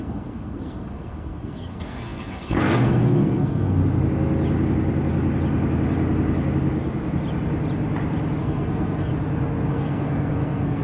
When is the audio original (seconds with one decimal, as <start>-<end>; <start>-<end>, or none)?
3.8-8.4; 9.1-9.7